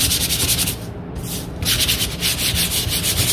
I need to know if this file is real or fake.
real